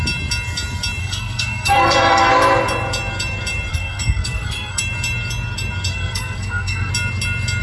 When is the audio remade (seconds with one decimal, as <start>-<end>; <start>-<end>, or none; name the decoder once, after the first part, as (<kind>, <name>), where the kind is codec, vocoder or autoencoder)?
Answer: 1.0-2.3 (codec, SNAC); 3.7-4.8; 5.9-6.9